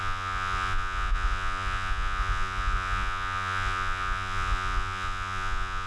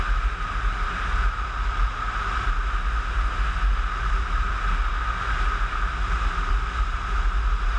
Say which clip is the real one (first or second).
second